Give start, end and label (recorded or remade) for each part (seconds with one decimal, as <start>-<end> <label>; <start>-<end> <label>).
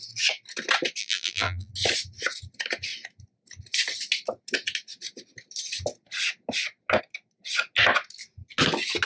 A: 0.0-1.0 recorded; 1.0-1.7 remade; 1.7-9.1 recorded